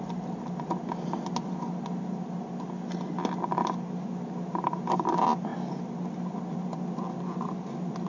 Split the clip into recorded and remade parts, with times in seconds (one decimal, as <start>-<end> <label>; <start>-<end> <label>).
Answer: 0.0-8.1 recorded

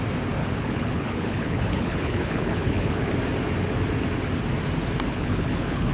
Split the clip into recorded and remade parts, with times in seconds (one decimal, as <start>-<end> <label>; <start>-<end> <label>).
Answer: 0.0-0.4 recorded; 0.4-3.1 remade; 3.1-5.1 recorded; 5.1-5.9 remade

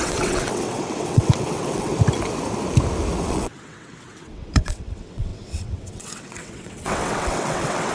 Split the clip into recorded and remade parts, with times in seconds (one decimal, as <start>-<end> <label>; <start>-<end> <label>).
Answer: 0.0-1.9 remade; 1.9-3.2 recorded; 3.2-7.9 remade

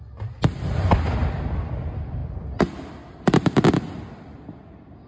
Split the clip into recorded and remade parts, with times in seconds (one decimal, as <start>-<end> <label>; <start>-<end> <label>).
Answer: 0.0-5.1 recorded